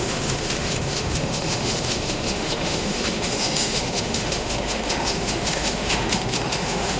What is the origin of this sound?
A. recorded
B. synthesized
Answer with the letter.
B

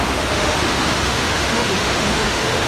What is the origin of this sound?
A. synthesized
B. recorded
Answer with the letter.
A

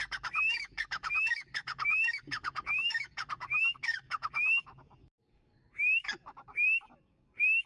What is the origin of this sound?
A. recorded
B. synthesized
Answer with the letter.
B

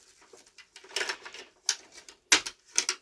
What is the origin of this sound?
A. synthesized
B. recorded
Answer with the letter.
B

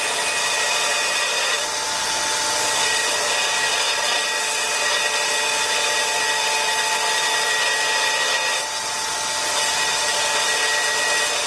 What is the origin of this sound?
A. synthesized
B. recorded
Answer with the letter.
B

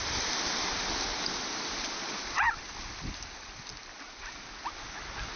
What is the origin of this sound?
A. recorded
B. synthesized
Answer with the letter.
A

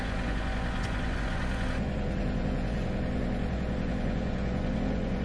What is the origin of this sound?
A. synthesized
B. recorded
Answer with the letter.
A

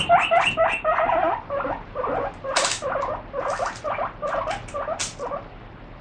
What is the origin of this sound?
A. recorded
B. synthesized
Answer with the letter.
A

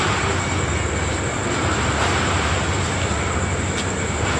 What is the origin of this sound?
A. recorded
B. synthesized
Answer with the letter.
A